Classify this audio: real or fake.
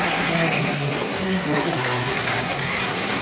fake